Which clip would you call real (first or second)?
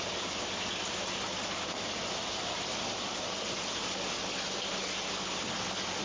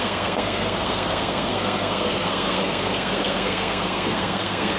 first